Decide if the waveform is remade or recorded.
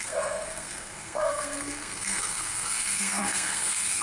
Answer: remade